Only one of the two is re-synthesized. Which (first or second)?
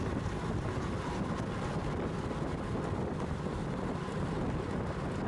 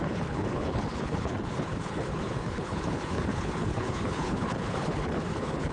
second